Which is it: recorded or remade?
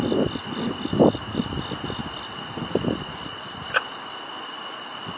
recorded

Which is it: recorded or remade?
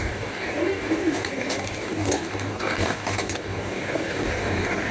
remade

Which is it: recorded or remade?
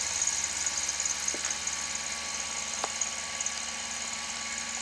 recorded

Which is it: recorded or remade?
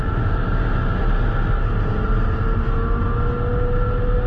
recorded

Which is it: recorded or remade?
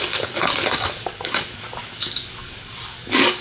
remade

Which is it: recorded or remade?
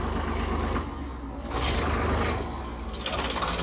recorded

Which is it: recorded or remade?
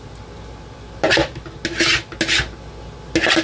recorded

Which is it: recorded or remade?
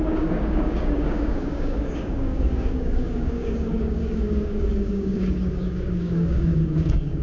remade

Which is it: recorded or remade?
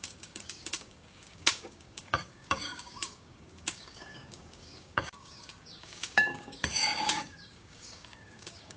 remade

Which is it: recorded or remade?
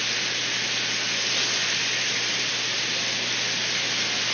recorded